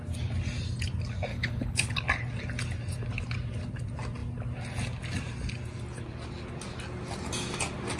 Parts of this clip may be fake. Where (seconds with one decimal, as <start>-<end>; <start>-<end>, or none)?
1.3-1.9